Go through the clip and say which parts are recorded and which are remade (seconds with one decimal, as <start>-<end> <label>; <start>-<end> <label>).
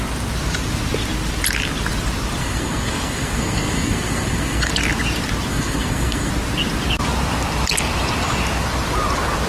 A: 0.0-2.4 recorded; 2.4-4.7 remade; 4.7-5.5 recorded; 5.5-6.3 remade; 6.3-9.5 recorded